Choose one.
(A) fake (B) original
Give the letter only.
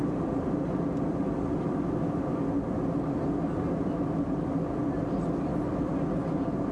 B